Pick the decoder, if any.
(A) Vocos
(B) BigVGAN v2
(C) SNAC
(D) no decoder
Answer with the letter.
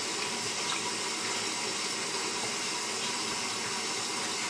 D